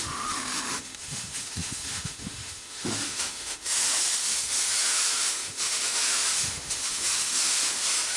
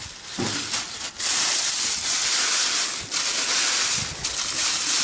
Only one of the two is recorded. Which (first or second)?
second